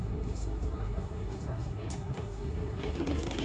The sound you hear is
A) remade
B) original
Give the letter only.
A